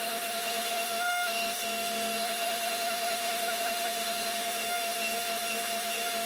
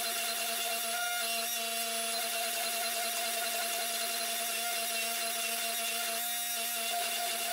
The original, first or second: second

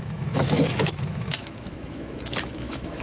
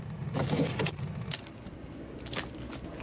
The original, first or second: second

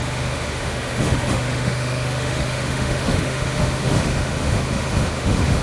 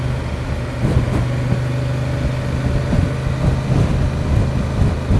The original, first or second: second